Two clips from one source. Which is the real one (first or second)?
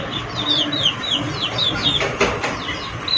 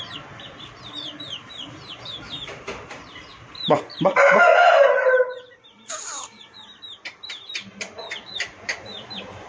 first